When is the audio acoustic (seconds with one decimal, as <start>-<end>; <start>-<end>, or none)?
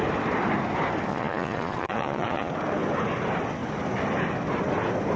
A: 0.0-1.1; 2.5-5.2